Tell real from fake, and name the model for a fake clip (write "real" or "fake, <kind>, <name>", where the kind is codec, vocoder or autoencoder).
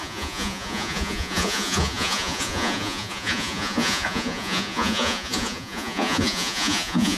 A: fake, vocoder, Vocos